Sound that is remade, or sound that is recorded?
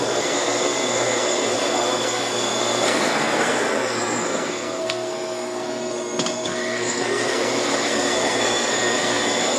remade